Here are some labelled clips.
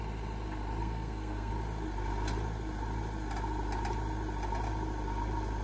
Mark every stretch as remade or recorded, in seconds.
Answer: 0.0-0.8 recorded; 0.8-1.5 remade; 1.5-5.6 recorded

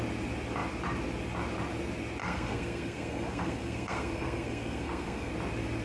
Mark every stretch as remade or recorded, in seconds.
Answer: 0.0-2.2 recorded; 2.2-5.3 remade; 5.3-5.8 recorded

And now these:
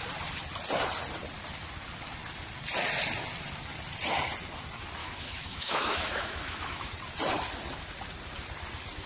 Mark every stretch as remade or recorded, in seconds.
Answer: 0.0-5.0 recorded; 5.0-6.9 remade; 6.9-9.1 recorded